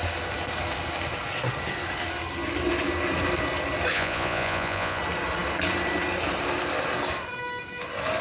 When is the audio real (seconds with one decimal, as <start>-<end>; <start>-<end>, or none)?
0.0-3.9; 5.0-8.2